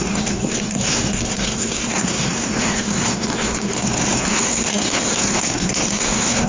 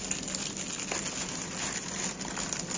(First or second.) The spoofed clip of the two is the first